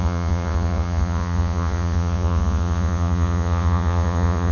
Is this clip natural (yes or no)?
no